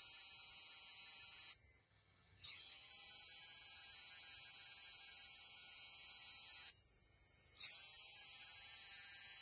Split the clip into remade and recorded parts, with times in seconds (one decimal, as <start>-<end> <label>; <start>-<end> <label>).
0.0-1.8 recorded; 1.8-2.9 remade; 2.9-9.4 recorded